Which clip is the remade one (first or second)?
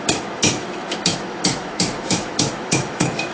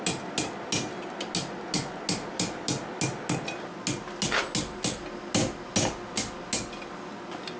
first